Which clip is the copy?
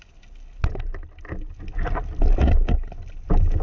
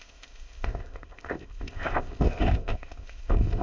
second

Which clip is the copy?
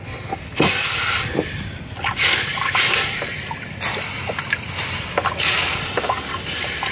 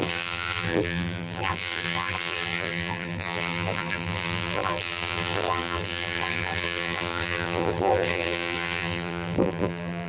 second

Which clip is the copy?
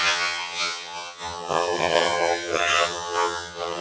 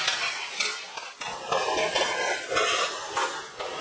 first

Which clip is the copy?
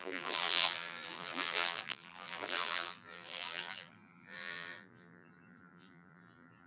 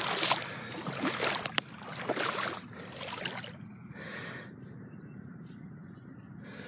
first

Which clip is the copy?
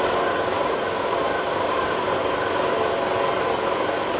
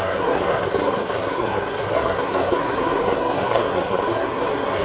second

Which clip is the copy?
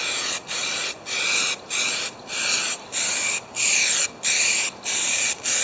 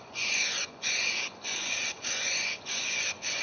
second